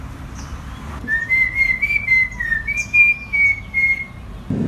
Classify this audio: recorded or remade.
recorded